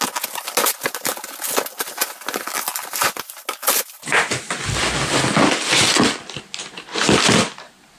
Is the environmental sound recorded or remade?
recorded